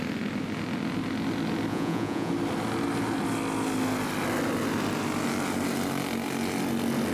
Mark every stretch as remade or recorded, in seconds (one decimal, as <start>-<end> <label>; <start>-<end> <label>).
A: 0.0-1.7 recorded; 1.7-2.3 remade; 2.3-7.1 recorded